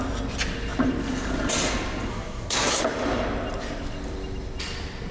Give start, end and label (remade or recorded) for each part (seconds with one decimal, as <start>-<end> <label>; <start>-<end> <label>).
0.0-2.1 recorded; 2.1-2.8 remade; 2.8-5.1 recorded